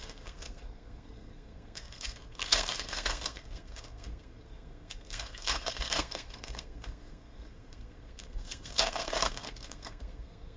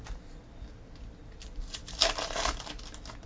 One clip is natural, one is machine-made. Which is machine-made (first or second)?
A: first